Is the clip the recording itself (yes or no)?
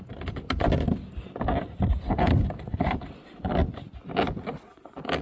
yes